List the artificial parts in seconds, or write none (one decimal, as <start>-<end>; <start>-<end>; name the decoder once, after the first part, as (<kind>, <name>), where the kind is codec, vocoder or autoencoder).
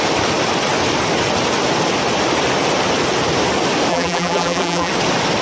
3.9-4.9 (vocoder, BigVGAN v2)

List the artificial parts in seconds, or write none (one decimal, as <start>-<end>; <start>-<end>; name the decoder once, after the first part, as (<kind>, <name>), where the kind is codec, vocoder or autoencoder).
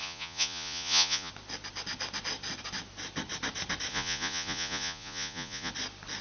0.0-1.3 (vocoder, Vocos); 3.9-5.7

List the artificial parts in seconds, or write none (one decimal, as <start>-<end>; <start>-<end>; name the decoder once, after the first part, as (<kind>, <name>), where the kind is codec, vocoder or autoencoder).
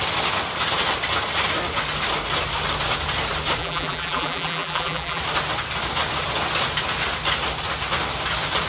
3.6-5.2 (vocoder, BigVGAN v2)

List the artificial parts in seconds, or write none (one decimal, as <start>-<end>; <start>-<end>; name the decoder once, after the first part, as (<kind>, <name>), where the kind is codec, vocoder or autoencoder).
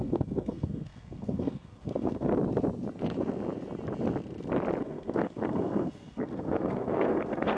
0.0-2.3 (codec, SNAC); 4.8-7.6